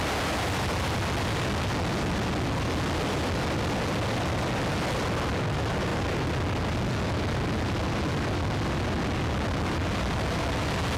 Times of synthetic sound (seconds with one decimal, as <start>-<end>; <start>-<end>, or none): none